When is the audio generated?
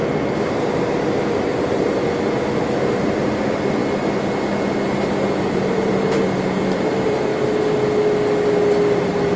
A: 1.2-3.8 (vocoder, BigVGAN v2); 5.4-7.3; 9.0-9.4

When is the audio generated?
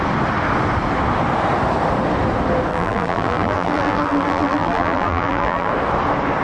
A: 2.7-5.7 (vocoder, BigVGAN v2)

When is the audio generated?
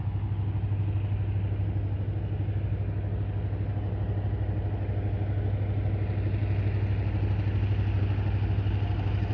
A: none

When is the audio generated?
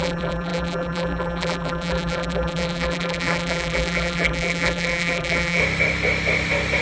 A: 0.0-5.6 (vocoder, BigVGAN v2)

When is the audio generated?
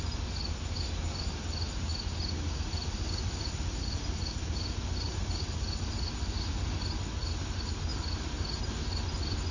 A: none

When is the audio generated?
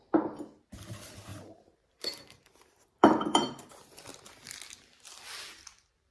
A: 1.3-3.8 (vocoder, BigVGAN v2)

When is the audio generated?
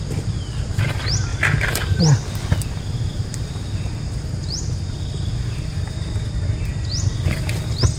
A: 1.3-2.0 (vocoder, BigVGAN v2)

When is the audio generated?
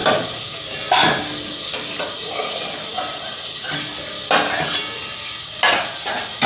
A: 0.0-0.8 (vocoder, BigVGAN v2)